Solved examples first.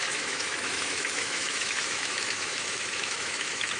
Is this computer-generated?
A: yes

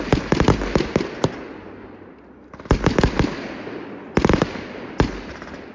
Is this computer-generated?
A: no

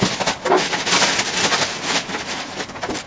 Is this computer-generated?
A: no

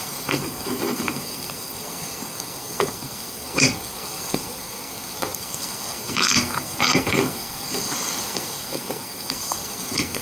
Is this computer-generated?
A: yes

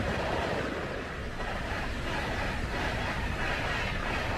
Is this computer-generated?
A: no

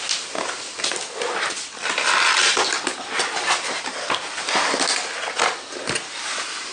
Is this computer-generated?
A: no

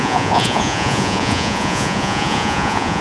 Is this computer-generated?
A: yes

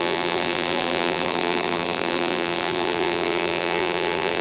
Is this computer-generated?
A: yes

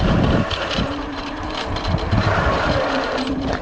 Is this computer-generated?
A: yes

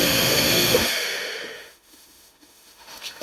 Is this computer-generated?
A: yes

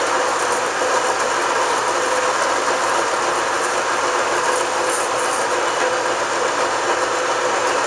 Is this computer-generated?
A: no